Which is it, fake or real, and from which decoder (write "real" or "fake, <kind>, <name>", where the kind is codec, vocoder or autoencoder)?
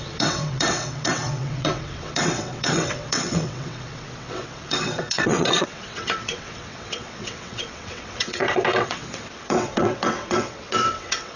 fake, vocoder, WaveNeXt